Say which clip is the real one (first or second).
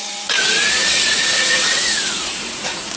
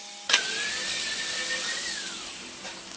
second